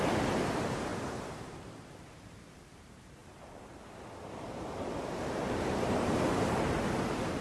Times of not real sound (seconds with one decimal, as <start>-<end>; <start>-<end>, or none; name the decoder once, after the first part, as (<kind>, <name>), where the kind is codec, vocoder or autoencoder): 0.0-3.2 (vocoder, BigVGAN v2); 4.2-7.4